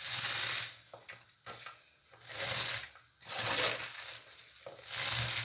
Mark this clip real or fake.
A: real